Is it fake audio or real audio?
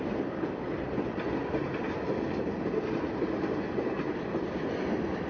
real